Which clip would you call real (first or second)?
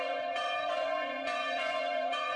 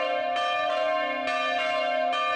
second